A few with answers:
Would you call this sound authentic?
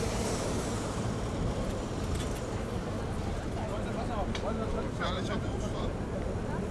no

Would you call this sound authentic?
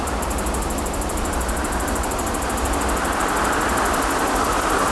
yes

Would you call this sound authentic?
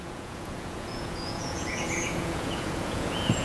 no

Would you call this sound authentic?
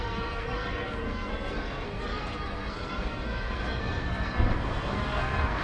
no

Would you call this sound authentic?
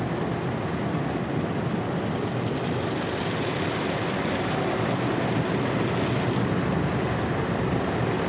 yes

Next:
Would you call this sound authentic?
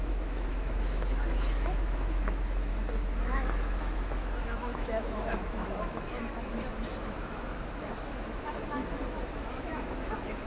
no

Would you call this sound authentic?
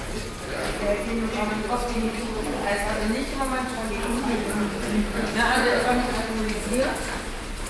yes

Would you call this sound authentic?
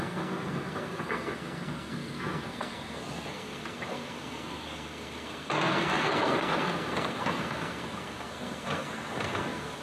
no